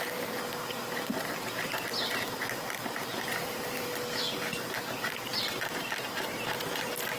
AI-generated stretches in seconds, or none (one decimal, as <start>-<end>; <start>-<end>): 0.0-5.3; 6.6-7.2